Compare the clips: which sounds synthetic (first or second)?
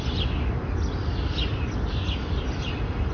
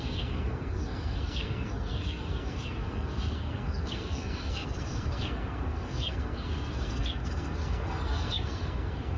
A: second